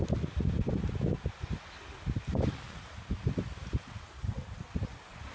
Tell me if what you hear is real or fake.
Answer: real